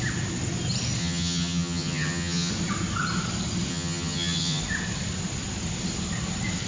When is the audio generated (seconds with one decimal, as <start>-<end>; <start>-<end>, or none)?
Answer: 1.0-2.5; 3.7-4.6